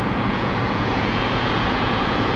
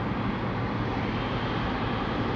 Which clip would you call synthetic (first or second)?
first